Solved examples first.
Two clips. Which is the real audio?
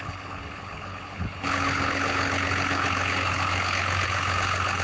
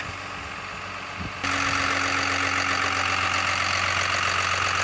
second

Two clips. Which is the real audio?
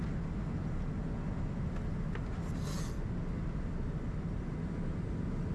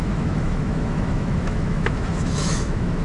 first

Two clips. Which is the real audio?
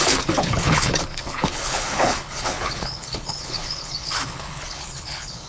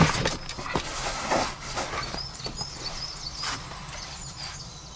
second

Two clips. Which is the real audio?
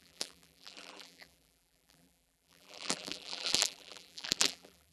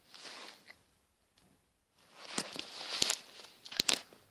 second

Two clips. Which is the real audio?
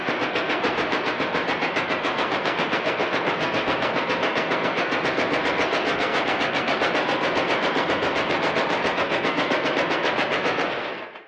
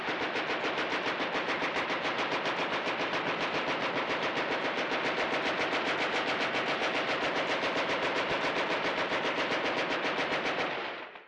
second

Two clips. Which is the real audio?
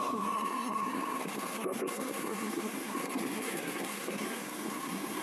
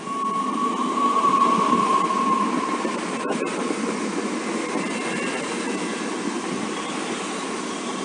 second